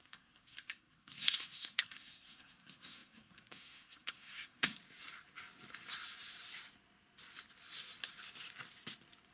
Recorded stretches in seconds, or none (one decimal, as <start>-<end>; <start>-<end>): 4.7-9.3